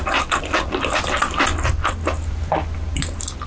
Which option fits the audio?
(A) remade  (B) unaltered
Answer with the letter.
B